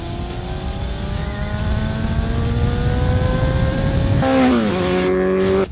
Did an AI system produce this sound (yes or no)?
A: no